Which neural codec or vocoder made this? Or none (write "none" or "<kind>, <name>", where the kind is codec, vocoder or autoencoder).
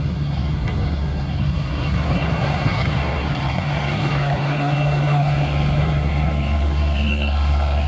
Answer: codec, SNAC